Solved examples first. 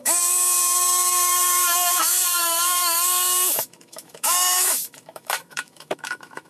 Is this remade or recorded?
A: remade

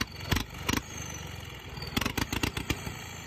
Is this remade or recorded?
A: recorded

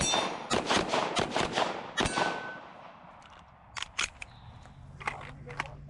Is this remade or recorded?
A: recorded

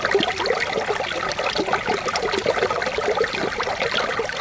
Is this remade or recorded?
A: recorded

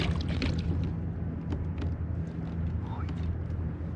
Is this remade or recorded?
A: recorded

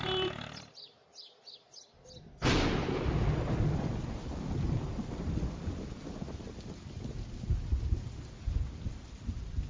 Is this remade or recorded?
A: recorded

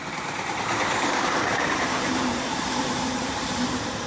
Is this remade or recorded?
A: remade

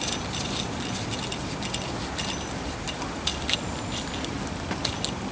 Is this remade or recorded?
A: recorded